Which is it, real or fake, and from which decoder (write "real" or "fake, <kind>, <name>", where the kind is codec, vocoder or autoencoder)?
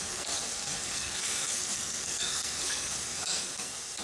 fake, codec, SNAC